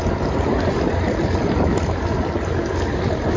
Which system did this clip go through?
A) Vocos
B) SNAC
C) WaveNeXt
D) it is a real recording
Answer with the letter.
D